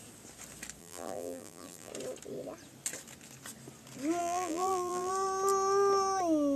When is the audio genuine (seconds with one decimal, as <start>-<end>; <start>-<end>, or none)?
0.0-0.8; 1.9-4.2; 5.1-6.6